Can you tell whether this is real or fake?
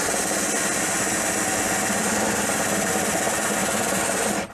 real